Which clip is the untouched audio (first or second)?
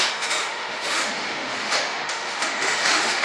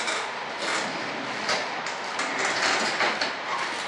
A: second